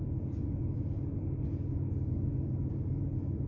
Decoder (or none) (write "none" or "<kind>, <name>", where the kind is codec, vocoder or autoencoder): none